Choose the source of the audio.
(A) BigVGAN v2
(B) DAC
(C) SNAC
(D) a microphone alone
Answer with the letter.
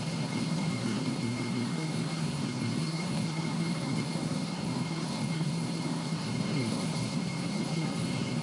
C